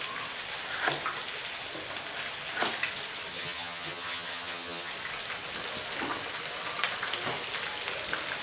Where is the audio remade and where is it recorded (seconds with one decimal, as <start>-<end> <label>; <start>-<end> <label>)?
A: 0.0-3.3 recorded; 3.3-4.9 remade; 4.9-8.4 recorded